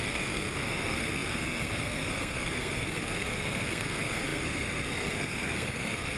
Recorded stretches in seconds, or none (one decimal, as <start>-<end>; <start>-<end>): none